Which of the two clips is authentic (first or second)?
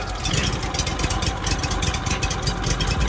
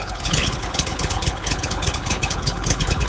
first